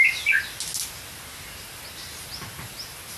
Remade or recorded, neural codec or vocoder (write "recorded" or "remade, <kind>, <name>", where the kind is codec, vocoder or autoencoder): recorded